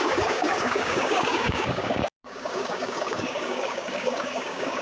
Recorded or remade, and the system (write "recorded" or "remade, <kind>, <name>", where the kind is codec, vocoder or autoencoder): remade, codec, DAC